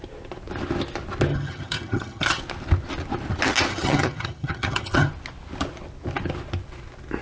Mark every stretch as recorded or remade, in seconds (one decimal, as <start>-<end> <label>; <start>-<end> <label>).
0.0-1.3 recorded; 1.3-2.4 remade; 2.4-3.7 recorded; 3.7-5.1 remade; 5.1-7.2 recorded